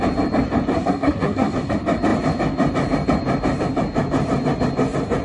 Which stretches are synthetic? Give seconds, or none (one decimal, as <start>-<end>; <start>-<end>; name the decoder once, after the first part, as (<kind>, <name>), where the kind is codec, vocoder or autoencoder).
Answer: 0.7-1.7 (codec, SNAC)